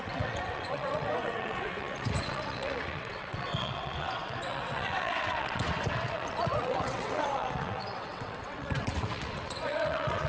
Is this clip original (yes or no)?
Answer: no